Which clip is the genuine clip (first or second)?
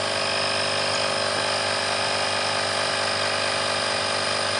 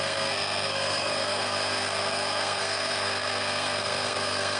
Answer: first